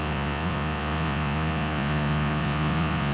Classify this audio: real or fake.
fake